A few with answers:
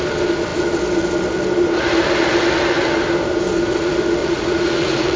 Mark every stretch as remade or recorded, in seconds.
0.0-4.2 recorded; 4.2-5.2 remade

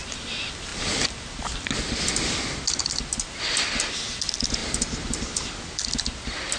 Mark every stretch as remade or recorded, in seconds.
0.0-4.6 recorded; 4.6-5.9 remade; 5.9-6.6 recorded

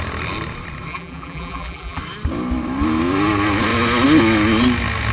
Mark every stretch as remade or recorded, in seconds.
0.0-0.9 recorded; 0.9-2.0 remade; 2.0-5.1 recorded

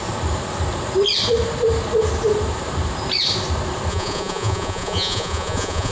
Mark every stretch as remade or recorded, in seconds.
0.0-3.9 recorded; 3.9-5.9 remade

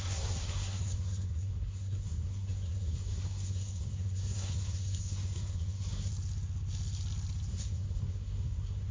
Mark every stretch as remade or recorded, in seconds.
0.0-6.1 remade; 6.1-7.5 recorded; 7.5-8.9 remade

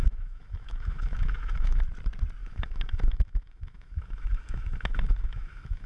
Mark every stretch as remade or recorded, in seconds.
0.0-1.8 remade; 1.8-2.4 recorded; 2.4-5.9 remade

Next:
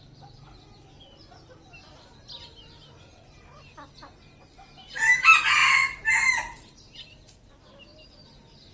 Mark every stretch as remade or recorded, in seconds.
0.0-8.7 recorded

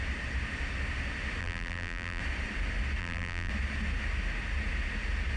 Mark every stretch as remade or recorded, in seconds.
0.0-1.4 recorded; 1.4-2.2 remade; 2.2-3.0 recorded; 3.0-3.5 remade; 3.5-5.4 recorded